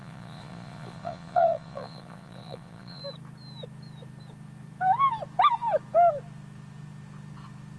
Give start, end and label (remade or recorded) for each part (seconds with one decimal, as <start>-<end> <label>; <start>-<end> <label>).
0.0-3.0 remade; 3.0-7.8 recorded